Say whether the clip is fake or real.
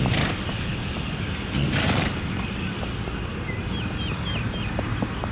real